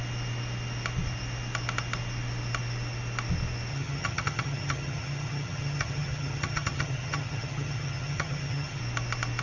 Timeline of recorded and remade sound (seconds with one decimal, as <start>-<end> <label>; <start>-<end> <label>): 0.0-3.7 recorded; 3.7-8.8 remade; 8.8-9.4 recorded